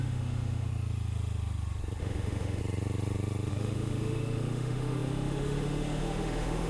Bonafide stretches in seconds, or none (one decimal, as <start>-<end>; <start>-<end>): 0.7-2.0; 2.6-3.5